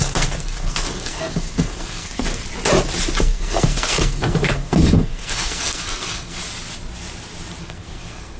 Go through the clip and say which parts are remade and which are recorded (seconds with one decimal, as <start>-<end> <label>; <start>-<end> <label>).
0.0-2.4 remade; 2.4-3.2 recorded; 3.2-6.4 remade; 6.4-7.6 recorded; 7.6-8.4 remade